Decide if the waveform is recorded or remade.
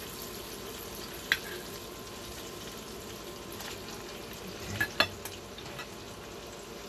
recorded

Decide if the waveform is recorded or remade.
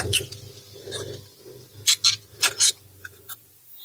recorded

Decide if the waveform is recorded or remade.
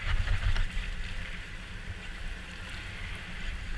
recorded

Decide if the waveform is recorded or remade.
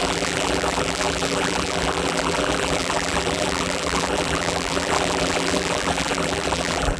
remade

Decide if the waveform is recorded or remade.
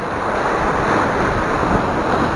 recorded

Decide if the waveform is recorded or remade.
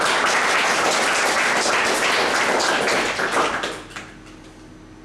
recorded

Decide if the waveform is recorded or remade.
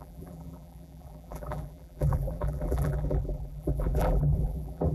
remade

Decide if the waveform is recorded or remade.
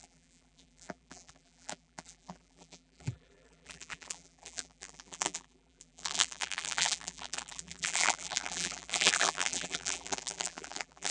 remade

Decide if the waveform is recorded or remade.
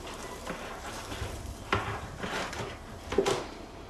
remade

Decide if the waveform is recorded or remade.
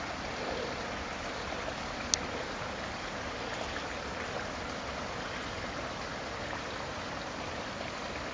recorded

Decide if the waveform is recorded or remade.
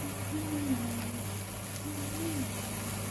recorded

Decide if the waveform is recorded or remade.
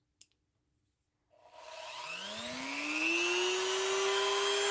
recorded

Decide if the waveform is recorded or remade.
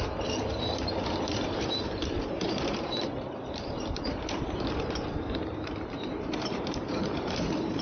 remade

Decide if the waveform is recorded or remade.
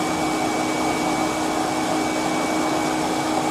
recorded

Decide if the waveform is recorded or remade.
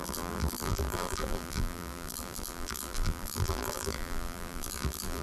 remade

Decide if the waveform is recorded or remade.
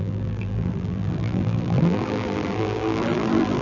remade